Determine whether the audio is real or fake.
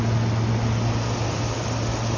real